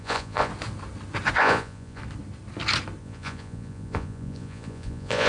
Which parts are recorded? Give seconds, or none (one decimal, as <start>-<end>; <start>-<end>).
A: 0.5-1.4; 2.0-3.0